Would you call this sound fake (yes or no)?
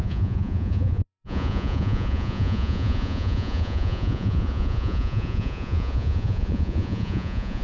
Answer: yes